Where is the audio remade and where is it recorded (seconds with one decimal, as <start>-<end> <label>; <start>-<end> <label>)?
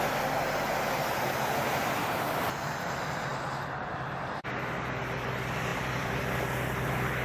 0.0-5.7 recorded; 5.7-6.2 remade; 6.2-7.2 recorded